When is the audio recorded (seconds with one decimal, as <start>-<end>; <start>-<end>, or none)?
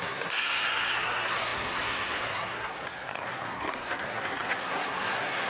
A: none